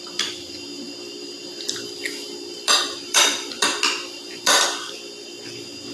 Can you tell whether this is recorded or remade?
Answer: remade